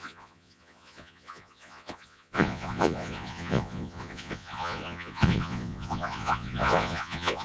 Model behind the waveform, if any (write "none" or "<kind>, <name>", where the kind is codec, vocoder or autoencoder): vocoder, Vocos